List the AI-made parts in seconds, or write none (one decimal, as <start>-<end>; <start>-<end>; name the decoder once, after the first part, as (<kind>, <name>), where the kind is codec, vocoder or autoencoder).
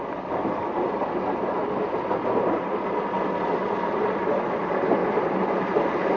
none